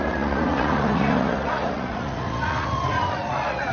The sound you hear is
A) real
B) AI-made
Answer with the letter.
B